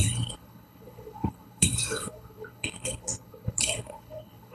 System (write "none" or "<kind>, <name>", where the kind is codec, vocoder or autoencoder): codec, HILCodec